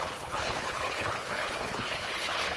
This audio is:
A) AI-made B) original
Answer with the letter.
A